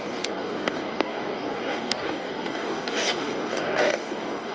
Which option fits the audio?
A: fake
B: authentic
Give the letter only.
A